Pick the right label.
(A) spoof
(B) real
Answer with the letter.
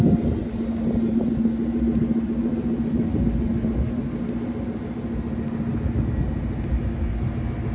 B